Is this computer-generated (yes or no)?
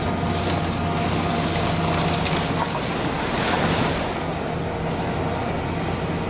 no